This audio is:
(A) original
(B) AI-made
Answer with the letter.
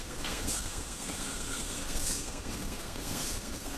B